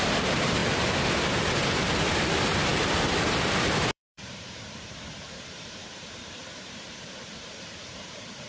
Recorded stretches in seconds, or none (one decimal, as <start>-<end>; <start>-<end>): 0.6-2.1

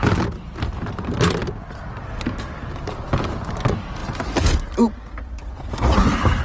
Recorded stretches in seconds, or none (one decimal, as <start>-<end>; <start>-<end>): 0.0-6.4